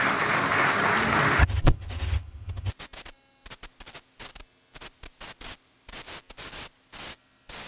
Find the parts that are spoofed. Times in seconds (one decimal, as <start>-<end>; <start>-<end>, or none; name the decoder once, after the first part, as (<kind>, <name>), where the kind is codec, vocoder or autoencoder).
1.4-2.7 (vocoder, HiFi-GAN)